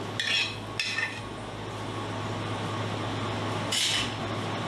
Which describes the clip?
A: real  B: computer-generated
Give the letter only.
A